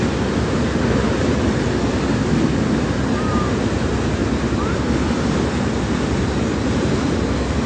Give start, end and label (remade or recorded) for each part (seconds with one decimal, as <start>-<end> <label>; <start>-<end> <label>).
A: 0.0-7.7 recorded